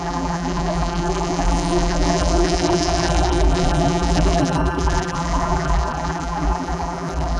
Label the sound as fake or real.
fake